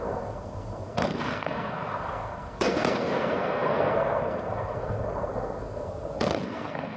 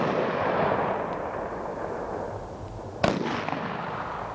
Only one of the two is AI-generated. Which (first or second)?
first